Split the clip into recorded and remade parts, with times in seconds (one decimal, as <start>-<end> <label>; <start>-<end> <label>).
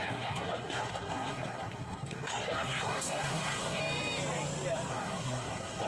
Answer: 0.0-3.8 remade; 3.8-4.9 recorded; 4.9-5.9 remade